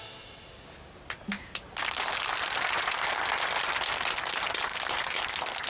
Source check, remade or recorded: recorded